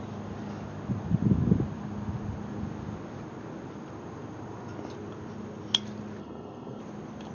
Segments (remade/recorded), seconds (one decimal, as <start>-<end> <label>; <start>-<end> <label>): 0.0-6.2 recorded; 6.2-6.8 remade; 6.8-7.3 recorded